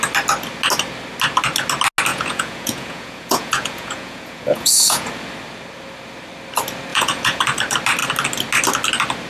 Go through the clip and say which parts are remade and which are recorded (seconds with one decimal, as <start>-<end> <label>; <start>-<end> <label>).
0.0-2.1 recorded; 2.1-5.1 remade; 5.1-6.9 recorded; 6.9-7.4 remade; 7.4-9.3 recorded